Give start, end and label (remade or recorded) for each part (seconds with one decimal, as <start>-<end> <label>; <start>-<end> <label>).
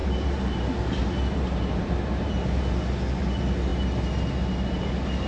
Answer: 0.0-0.6 remade; 0.6-1.0 recorded; 1.0-2.3 remade; 2.3-5.3 recorded